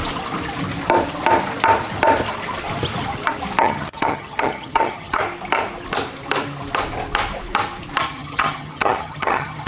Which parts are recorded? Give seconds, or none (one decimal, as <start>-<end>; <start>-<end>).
0.0-3.6; 5.2-8.0